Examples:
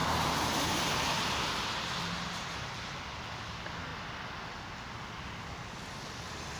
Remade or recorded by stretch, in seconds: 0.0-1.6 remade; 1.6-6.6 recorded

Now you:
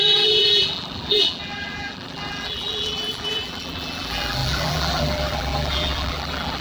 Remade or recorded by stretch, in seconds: 0.0-6.6 remade

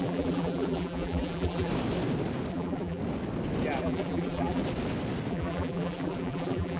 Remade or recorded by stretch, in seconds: 0.0-1.7 remade; 1.7-2.5 recorded; 2.5-3.0 remade; 3.0-3.8 recorded; 3.8-4.6 remade; 4.6-5.3 recorded; 5.3-6.8 remade

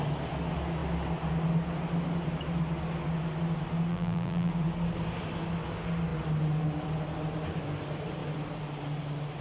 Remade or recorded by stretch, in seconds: 0.0-3.9 recorded; 3.9-4.5 remade; 4.5-9.4 recorded

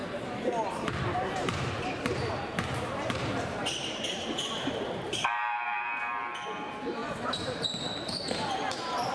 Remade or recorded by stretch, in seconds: 0.0-0.7 recorded; 0.7-9.1 remade